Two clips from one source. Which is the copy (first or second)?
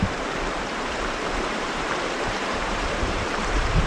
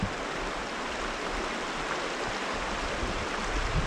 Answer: first